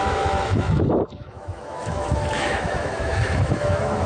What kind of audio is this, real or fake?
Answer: fake